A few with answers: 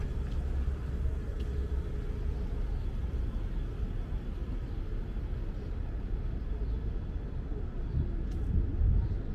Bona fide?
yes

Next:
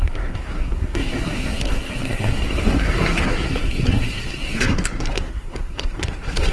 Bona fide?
no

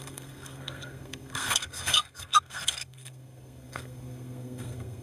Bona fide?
no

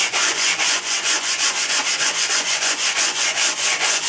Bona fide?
no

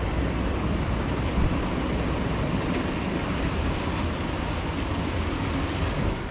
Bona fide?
yes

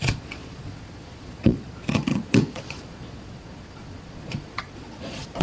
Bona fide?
no